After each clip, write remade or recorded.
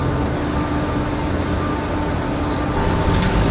recorded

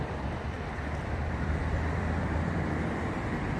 remade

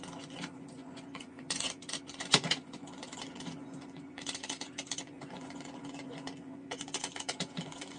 remade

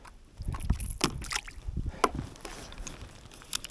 recorded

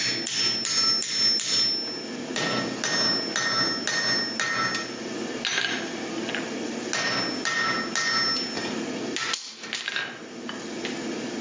recorded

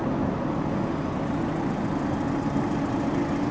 recorded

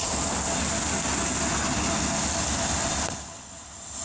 recorded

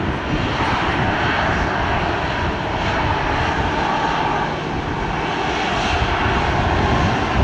recorded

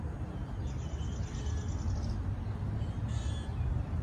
recorded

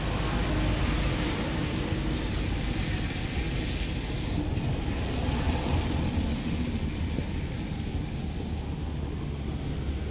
recorded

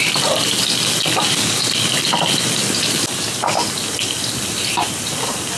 recorded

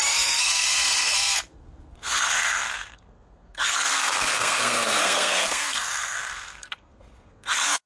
remade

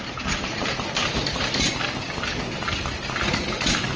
recorded